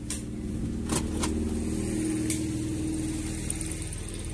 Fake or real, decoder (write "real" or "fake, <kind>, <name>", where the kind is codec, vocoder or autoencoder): real